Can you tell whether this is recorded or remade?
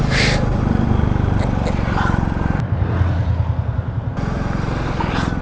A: recorded